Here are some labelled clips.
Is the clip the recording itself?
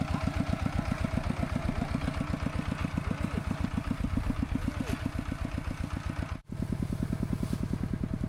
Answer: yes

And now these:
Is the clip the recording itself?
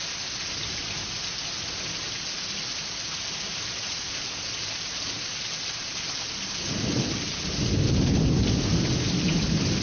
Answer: yes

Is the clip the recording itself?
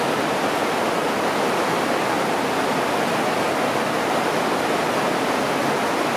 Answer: yes